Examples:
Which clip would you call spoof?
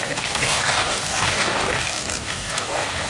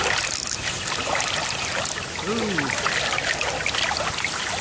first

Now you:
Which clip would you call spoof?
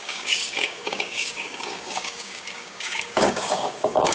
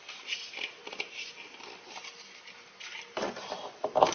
first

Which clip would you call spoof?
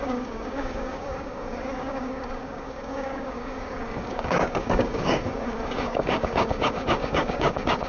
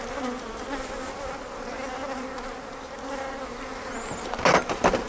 first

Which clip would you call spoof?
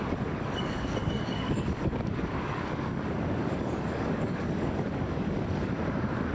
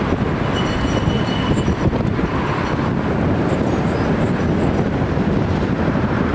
first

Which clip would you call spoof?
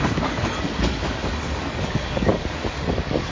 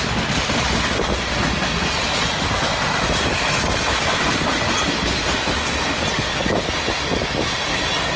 first